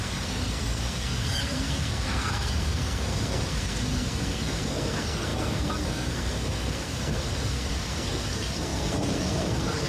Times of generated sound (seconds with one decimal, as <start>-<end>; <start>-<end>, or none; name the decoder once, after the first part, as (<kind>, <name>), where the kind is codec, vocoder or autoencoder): 0.0-9.9 (codec, SNAC)